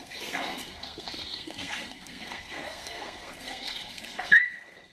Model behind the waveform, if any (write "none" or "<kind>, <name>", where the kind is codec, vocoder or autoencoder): codec, SNAC